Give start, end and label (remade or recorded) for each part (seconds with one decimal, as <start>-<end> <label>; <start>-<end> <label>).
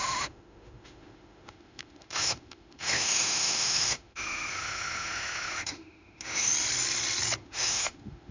0.0-6.5 remade; 6.5-7.4 recorded; 7.4-8.3 remade